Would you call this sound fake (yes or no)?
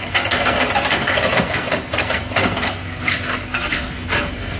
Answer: yes